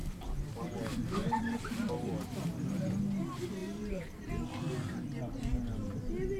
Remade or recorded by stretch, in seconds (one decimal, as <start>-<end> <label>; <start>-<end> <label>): 0.0-3.0 remade; 3.0-3.6 recorded; 3.6-4.3 remade; 4.3-6.4 recorded